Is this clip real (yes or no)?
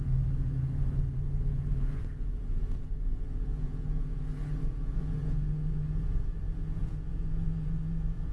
no